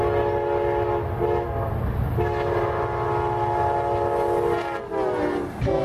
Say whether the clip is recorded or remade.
recorded